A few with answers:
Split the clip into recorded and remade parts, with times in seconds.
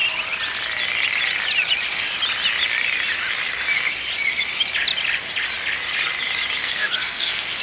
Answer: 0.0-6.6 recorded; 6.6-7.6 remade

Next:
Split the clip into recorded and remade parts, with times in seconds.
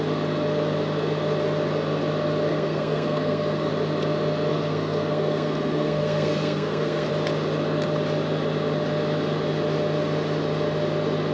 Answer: 0.0-2.5 recorded; 2.5-3.7 remade; 3.7-4.5 recorded; 4.5-7.1 remade; 7.1-11.3 recorded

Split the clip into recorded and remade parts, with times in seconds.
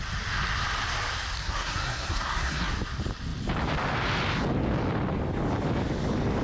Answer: 0.0-1.4 recorded; 1.4-2.7 remade; 2.7-6.4 recorded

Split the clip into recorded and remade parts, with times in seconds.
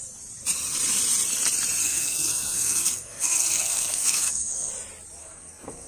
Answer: 0.0-1.8 recorded; 1.8-4.7 remade; 4.7-5.2 recorded; 5.2-5.9 remade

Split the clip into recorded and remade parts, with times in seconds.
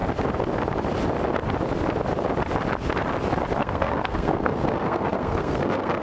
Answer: 0.0-3.6 recorded; 3.6-6.0 remade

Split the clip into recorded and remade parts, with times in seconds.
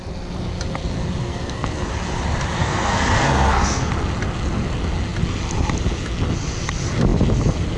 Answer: 0.0-1.2 recorded; 1.2-1.9 remade; 1.9-2.6 recorded; 2.6-3.9 remade; 3.9-7.8 recorded